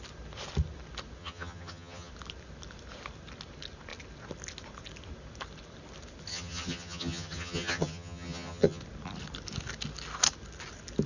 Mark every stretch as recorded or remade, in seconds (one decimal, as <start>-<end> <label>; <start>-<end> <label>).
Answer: 0.0-1.2 recorded; 1.2-2.1 remade; 2.1-6.3 recorded; 6.3-8.8 remade; 8.8-11.1 recorded